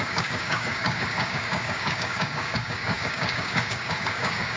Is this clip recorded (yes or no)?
no